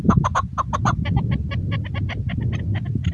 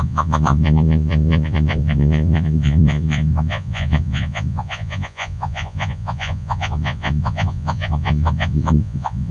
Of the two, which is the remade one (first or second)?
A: second